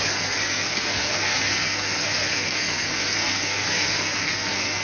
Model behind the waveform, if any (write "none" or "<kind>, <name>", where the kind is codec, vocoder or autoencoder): codec, SNAC